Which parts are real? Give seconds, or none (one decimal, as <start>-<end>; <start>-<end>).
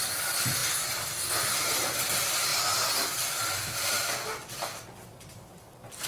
2.5-3.8; 5.1-6.1